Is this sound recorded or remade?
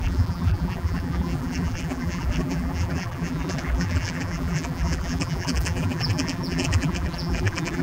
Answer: remade